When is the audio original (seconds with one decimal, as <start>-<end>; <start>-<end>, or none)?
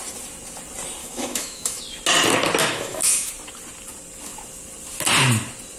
0.0-1.0; 1.8-2.6; 3.3-5.8